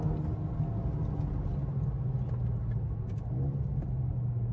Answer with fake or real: real